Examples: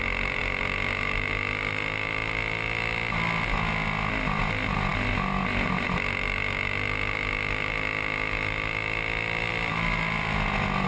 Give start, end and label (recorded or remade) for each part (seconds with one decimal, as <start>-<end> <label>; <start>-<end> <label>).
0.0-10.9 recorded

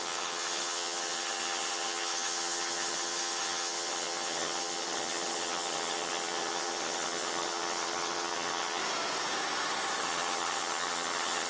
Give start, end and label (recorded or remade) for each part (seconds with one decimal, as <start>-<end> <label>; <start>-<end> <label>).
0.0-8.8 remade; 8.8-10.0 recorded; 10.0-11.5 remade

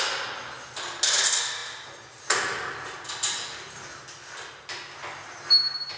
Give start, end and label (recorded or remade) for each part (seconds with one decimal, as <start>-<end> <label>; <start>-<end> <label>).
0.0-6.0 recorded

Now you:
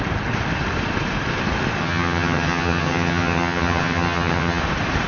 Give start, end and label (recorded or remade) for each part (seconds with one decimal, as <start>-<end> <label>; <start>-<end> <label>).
0.0-1.8 recorded; 1.8-4.6 remade; 4.6-5.1 recorded

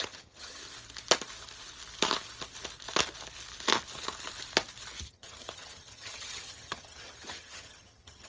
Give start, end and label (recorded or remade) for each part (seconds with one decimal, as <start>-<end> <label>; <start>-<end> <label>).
0.0-0.6 remade; 0.6-5.1 recorded; 5.1-8.3 remade

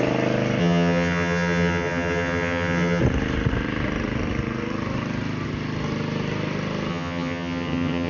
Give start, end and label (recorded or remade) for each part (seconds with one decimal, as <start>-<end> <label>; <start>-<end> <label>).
0.0-0.6 recorded; 0.6-3.0 remade; 3.0-6.9 recorded; 6.9-8.1 remade